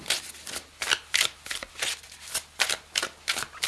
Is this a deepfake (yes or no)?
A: no